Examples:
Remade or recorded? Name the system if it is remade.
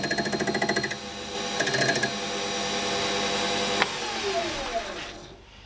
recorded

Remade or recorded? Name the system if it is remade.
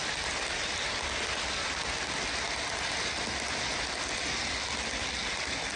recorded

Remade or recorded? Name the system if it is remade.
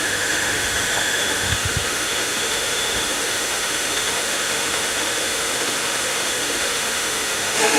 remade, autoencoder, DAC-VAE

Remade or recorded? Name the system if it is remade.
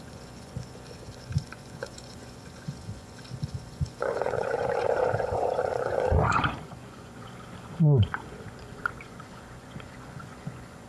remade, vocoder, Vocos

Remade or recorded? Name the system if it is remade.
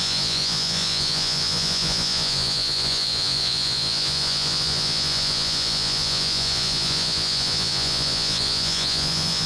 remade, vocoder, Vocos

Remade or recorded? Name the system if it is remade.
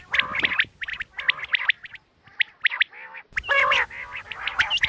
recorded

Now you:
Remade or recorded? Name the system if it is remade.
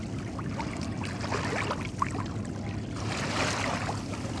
recorded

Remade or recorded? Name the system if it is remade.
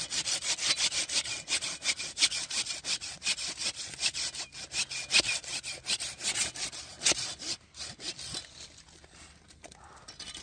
recorded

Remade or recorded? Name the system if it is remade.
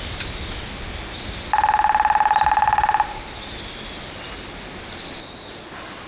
recorded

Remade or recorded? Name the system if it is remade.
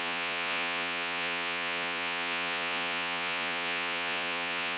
remade, vocoder, Vocos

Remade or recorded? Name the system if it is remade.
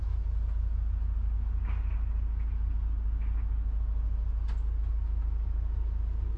recorded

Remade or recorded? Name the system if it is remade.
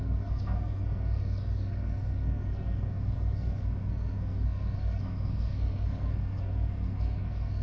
remade, codec, SNAC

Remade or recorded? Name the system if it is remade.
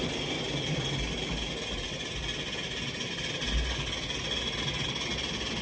recorded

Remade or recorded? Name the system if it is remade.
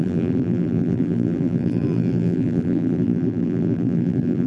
remade, vocoder, BigVGAN v2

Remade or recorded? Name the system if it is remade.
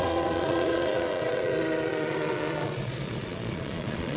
remade, vocoder, Vocos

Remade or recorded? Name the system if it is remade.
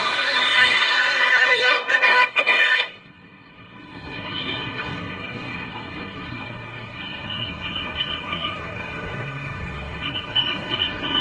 remade, codec, SNAC